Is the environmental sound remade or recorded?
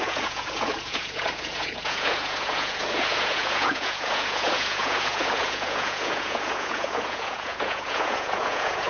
remade